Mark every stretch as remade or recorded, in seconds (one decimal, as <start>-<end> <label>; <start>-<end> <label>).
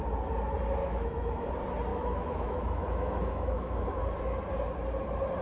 0.0-0.8 recorded; 0.8-1.5 remade; 1.5-1.9 recorded; 1.9-4.0 remade; 4.0-5.4 recorded